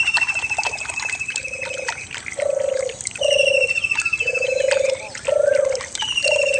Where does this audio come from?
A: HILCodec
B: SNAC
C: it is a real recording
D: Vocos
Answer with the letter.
C